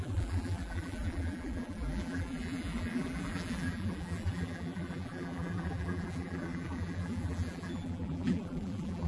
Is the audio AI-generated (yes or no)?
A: yes